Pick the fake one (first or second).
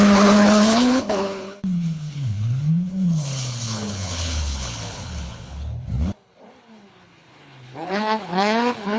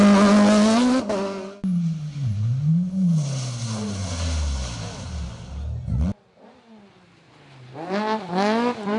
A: first